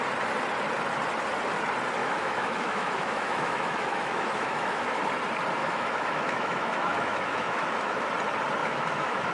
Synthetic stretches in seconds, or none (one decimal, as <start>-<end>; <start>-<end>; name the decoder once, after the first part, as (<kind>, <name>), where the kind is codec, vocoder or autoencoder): 2.0-5.0 (autoencoder, DAC-VAE); 5.6-8.1; 8.6-9.3